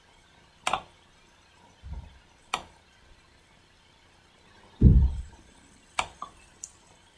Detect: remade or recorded remade